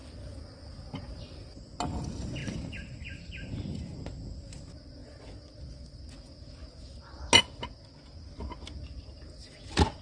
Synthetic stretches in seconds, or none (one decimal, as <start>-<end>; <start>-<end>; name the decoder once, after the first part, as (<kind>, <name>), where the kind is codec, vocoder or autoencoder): 5.0-6.0 (vocoder, Vocos)